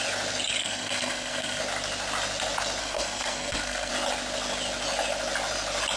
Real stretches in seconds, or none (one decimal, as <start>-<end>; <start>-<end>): 0.0-0.6; 1.6-2.8; 3.9-6.0